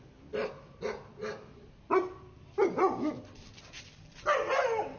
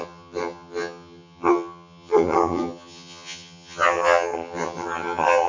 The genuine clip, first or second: first